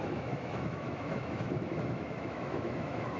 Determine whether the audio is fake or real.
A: fake